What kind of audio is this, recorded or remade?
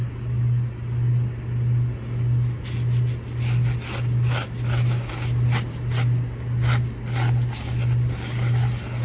recorded